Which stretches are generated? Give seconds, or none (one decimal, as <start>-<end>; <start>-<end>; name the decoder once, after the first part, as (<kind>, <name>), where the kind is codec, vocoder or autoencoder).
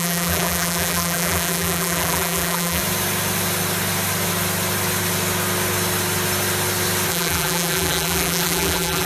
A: 0.0-2.8 (vocoder, BigVGAN v2); 7.1-9.1